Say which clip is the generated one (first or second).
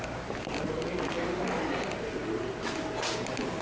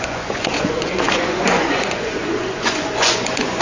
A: second